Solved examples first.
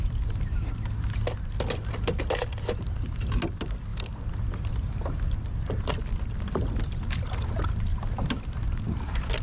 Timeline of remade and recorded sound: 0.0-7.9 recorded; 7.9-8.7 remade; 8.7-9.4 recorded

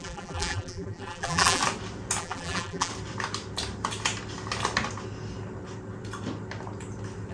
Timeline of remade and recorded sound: 0.0-1.6 remade; 1.6-2.2 recorded; 2.2-2.9 remade; 2.9-7.3 recorded

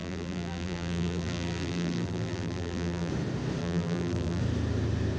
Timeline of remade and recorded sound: 0.0-3.1 remade; 3.1-3.6 recorded; 3.6-4.4 remade; 4.4-5.2 recorded

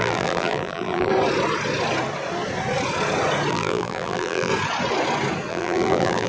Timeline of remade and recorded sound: 0.0-1.1 remade; 1.1-3.5 recorded; 3.5-4.5 remade; 4.5-5.5 recorded; 5.5-6.3 remade